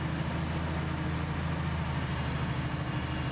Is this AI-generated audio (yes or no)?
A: no